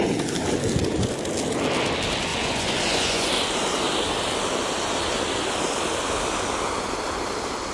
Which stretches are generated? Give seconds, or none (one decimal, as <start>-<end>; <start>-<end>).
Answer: 2.3-3.3